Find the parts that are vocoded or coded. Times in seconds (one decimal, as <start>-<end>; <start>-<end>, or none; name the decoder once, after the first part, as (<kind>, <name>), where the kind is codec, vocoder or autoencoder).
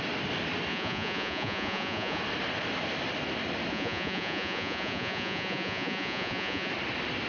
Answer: 0.7-2.2 (vocoder, Vocos); 3.7-6.7